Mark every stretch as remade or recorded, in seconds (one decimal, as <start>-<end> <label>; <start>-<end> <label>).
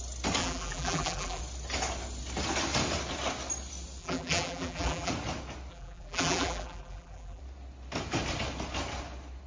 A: 0.0-0.4 recorded; 0.4-1.4 remade; 1.4-4.0 recorded; 4.0-5.1 remade; 5.1-5.7 recorded; 5.7-7.4 remade; 7.4-9.5 recorded